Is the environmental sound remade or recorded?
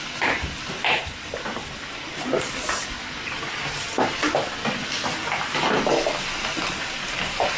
remade